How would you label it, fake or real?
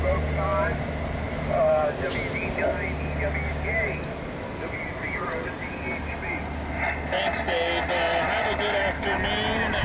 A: real